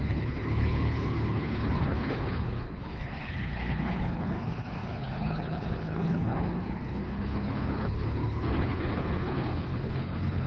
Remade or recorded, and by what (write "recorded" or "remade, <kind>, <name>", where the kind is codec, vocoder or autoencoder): remade, codec, HILCodec